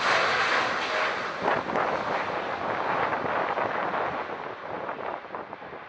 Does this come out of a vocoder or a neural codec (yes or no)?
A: no